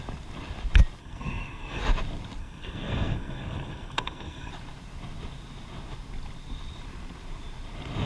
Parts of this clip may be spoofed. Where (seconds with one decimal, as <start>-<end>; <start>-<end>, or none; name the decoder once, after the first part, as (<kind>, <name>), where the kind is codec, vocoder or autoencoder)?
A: 1.0-1.8 (codec, SNAC); 2.4-4.5